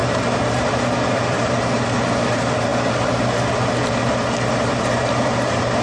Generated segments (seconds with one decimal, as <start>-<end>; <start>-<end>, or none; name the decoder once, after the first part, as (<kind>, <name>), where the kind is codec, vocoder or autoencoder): 1.3-2.7 (vocoder, BigVGAN v2); 4.5-5.8